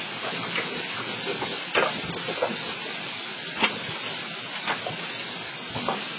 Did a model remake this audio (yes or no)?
no